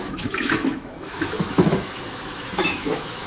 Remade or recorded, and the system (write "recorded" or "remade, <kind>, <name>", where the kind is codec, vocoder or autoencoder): remade, autoencoder, DAC-VAE